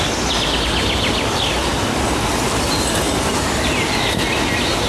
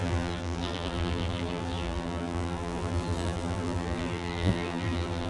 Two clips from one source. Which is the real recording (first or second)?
first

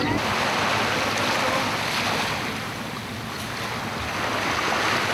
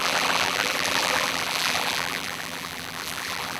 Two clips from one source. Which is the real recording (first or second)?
first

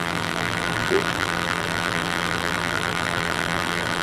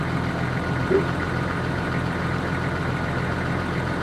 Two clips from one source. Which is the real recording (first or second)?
second